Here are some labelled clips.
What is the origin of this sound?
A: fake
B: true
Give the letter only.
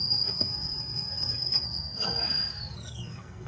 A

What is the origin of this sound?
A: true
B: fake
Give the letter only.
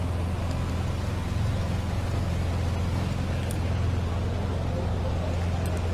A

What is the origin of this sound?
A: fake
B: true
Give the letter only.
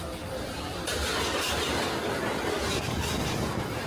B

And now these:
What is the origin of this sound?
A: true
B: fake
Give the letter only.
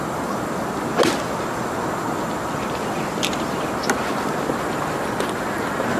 A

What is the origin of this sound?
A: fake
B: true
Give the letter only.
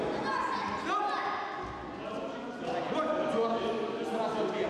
B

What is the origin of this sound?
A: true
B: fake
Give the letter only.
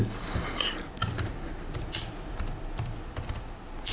A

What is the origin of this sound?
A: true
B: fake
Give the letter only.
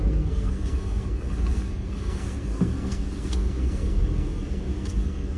B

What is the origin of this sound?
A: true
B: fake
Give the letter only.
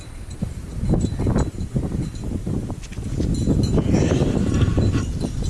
A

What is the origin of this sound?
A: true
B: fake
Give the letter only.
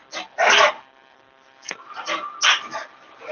A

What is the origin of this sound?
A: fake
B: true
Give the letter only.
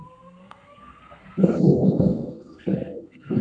A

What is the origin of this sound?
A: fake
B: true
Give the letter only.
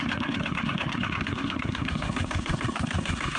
A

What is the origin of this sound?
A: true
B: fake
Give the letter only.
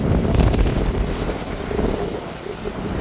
A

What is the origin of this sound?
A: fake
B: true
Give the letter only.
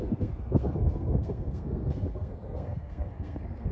A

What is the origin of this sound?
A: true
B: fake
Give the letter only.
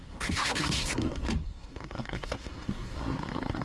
B